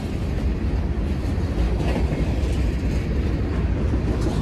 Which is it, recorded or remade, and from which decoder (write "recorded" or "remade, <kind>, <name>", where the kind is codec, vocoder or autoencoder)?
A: remade, vocoder, BigVGAN v2